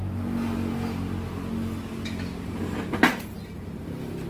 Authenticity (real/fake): real